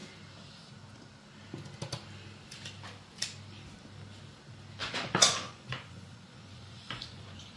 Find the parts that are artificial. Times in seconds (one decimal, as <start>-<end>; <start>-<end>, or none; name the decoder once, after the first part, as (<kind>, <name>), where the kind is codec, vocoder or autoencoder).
4.8-7.6 (vocoder, Vocos)